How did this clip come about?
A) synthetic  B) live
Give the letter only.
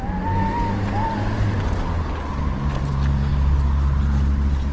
B